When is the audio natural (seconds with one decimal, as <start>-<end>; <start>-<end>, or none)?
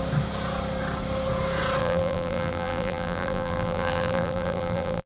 0.0-1.8